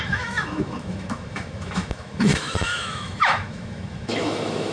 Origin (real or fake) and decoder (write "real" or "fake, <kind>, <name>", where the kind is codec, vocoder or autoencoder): fake, autoencoder, DAC-VAE